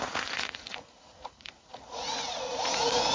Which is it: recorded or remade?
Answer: remade